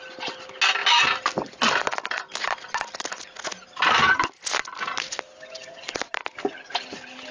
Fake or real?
real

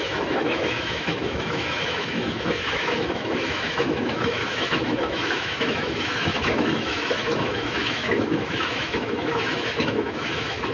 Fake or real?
fake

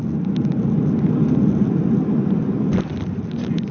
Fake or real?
real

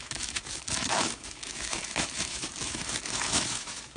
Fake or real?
fake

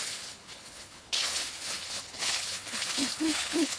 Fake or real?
fake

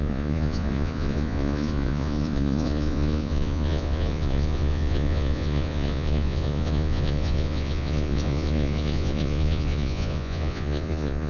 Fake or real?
fake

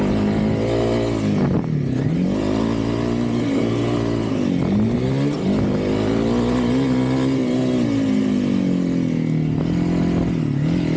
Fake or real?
real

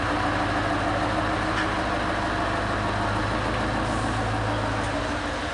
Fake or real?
real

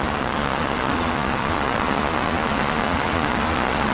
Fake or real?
fake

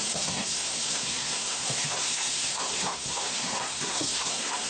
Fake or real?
fake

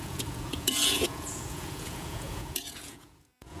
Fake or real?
fake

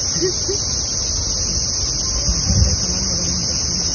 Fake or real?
real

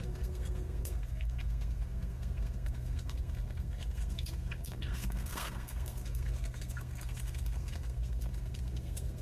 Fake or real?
fake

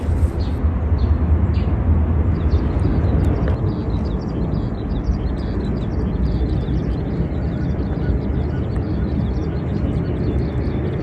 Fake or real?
real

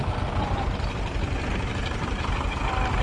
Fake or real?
real